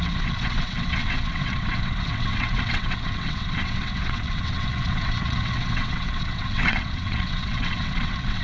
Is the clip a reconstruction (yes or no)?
yes